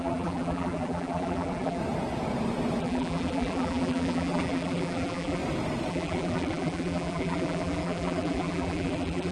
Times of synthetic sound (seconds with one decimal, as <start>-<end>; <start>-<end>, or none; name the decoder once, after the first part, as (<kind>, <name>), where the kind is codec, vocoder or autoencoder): 0.0-1.8 (vocoder, BigVGAN v2); 2.8-5.4; 5.9-9.3

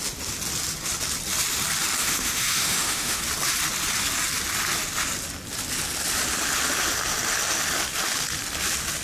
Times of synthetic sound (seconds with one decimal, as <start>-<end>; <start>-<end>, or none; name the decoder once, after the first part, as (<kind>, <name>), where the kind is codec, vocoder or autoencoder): 2.0-3.2 (autoencoder, DAC-VAE)

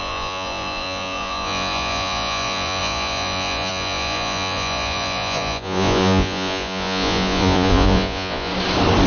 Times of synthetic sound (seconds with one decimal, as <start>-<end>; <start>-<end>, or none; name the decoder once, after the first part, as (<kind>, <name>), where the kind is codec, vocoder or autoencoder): 0.0-8.5 (vocoder, Vocos)

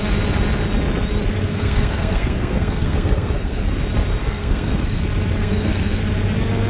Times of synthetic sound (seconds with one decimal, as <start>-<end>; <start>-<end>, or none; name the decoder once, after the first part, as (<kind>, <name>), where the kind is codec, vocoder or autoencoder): 1.5-3.8 (codec, SNAC); 4.2-5.0; 5.4-6.0